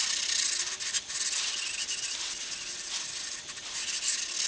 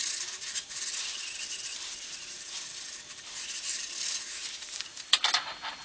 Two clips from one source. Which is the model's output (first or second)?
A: second